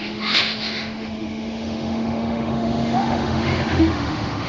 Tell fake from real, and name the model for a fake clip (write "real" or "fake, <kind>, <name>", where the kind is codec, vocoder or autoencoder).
fake, autoencoder, DAC-VAE